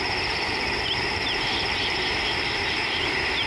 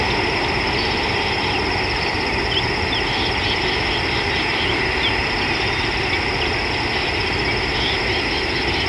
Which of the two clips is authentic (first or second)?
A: second